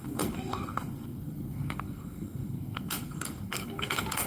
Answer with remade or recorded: remade